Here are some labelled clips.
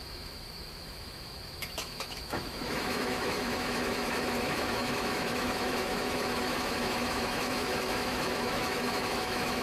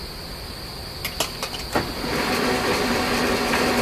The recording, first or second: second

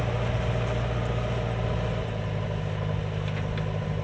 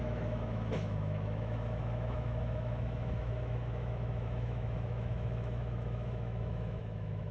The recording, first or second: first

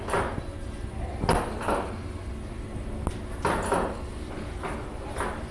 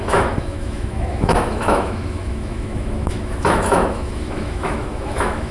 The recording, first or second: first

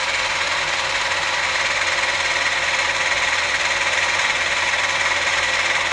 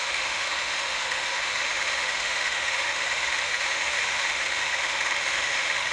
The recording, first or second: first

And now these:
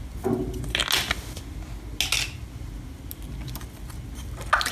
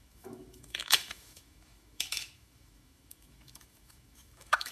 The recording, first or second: first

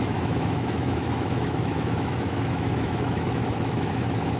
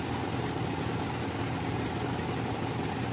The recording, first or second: second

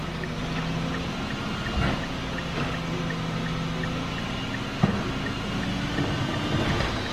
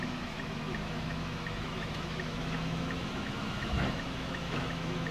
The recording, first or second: first